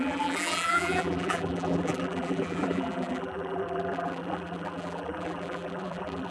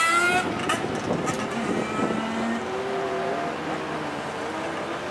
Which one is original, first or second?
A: second